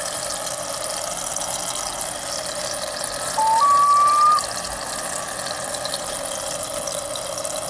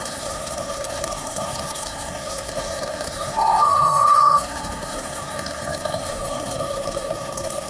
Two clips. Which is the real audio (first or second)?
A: first